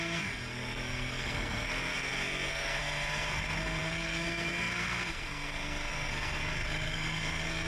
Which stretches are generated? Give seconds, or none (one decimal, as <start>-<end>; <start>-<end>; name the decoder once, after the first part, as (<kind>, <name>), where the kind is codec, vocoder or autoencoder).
0.0-7.7 (codec, SNAC)